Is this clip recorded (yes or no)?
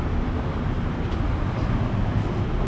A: yes